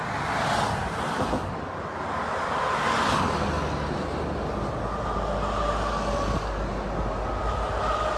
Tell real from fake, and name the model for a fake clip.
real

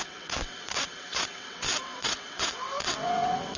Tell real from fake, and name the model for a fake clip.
fake, vocoder, WaveNeXt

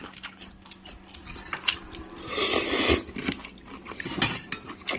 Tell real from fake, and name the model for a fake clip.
real